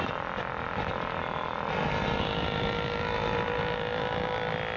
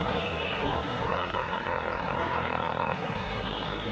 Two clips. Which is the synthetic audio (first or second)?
second